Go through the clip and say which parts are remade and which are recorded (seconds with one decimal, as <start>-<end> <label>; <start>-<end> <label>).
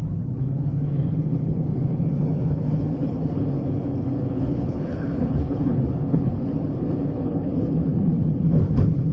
0.0-9.1 remade